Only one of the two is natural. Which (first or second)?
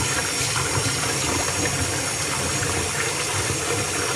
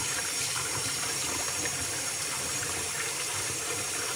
first